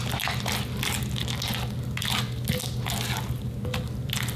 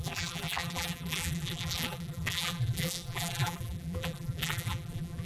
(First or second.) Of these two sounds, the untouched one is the first